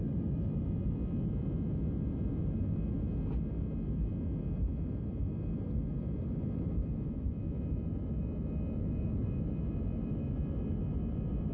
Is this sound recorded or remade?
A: recorded